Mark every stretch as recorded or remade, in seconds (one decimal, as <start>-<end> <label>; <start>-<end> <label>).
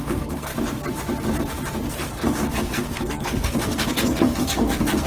0.0-0.5 remade; 0.5-1.9 recorded; 1.9-5.1 remade